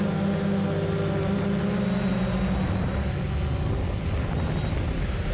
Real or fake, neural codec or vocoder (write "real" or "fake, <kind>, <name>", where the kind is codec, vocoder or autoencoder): real